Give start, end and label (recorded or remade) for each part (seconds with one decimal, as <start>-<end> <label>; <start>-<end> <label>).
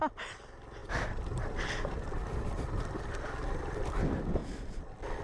0.0-5.2 recorded